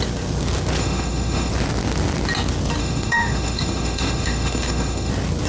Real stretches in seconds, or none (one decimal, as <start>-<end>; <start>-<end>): 0.0-0.8; 1.5-2.8; 5.1-5.5